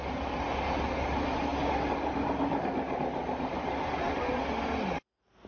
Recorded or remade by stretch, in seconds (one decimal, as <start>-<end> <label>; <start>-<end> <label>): 0.0-5.5 recorded